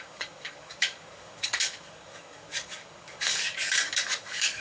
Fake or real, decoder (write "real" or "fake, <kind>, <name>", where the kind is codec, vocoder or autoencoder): fake, codec, DAC